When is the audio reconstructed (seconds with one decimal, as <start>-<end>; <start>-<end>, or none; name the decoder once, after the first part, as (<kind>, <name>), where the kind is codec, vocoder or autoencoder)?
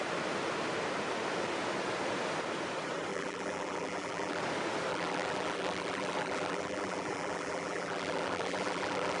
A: 3.1-4.4 (vocoder, BigVGAN v2); 4.9-9.2